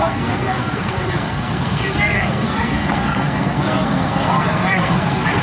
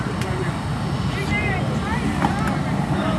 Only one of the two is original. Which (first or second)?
second